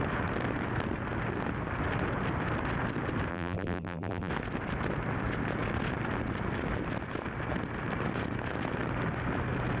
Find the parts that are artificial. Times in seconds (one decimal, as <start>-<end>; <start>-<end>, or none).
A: 3.3-4.3